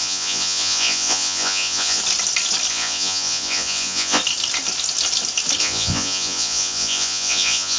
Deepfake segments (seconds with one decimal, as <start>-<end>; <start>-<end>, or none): 0.0-2.0; 2.7-4.2; 5.6-7.8